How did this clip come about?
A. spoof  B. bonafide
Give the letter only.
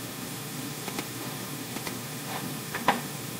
A